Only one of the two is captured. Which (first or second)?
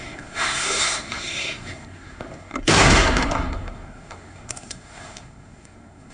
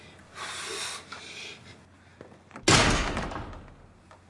second